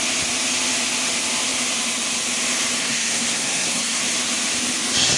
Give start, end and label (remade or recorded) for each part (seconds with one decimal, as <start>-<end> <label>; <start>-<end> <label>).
0.0-2.8 recorded; 2.8-4.0 remade; 4.0-5.2 recorded